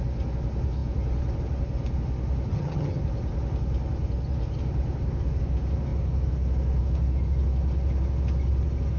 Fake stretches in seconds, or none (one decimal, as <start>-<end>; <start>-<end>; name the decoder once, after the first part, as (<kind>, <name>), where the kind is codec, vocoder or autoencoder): 2.5-3.0 (vocoder, HiFi-GAN)